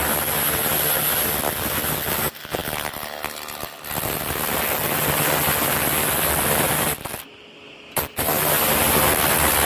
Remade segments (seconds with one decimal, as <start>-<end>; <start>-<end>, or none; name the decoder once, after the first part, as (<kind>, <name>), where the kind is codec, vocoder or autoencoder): 2.6-4.6 (vocoder, BigVGAN v2)